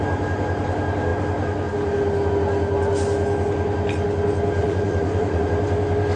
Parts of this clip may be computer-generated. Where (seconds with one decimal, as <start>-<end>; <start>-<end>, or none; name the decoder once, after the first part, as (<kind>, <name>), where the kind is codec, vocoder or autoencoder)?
4.6-5.5 (vocoder, Vocos)